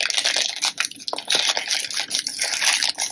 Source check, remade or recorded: recorded